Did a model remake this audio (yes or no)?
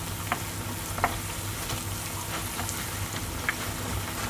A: no